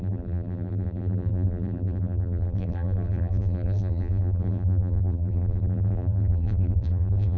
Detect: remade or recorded remade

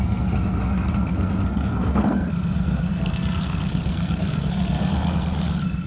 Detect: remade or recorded remade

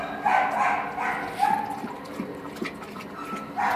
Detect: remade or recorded recorded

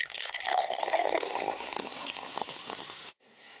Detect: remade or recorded remade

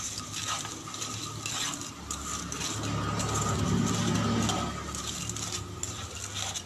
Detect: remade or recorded recorded